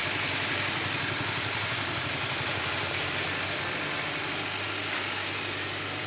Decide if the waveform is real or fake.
real